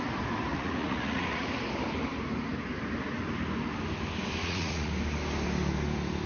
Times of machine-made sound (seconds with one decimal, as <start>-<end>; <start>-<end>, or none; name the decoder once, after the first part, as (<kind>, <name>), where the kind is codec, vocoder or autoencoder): 0.5-1.5 (vocoder, Vocos); 4.4-4.9